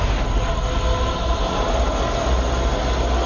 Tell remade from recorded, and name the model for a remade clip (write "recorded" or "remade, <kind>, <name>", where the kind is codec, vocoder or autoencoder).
recorded